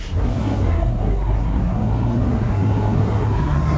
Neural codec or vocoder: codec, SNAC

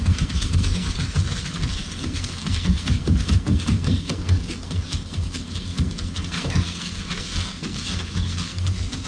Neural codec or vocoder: codec, SNAC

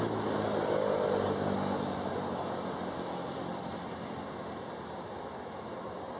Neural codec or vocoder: none